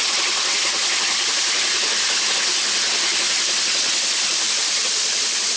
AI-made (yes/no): no